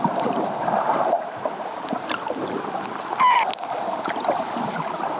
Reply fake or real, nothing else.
real